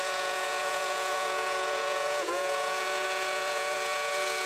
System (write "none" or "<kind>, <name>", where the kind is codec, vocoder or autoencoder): vocoder, Vocos